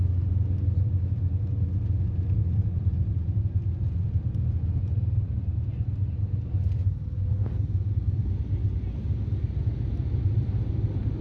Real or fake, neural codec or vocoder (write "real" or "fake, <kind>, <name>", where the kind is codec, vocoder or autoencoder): real